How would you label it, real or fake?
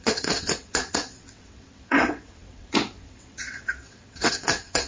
fake